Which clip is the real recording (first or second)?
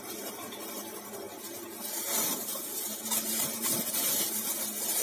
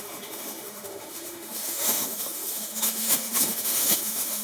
first